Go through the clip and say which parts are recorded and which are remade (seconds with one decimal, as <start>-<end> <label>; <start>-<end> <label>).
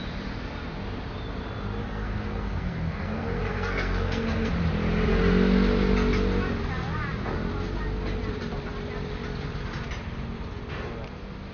0.0-1.8 recorded; 1.8-4.5 remade; 4.5-11.5 recorded